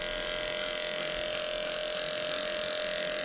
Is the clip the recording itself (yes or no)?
yes